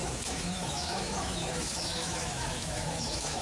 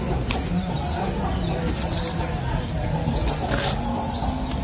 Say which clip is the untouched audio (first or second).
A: second